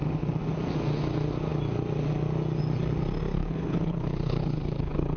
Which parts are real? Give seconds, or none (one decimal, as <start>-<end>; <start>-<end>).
0.0-3.3

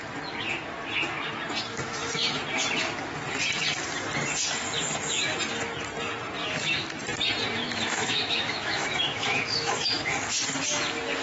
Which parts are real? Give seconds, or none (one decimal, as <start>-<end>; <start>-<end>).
0.0-1.7; 2.4-6.4; 7.0-7.4; 10.3-11.2

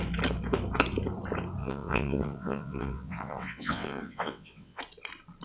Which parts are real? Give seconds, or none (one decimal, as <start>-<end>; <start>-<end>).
0.0-1.6; 4.8-5.4

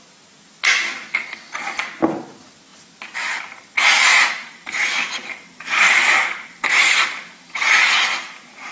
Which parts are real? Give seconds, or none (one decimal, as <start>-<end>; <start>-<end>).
0.0-4.1

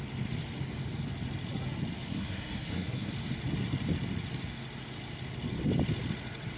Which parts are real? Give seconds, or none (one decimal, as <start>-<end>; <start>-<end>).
0.0-2.1; 3.1-6.6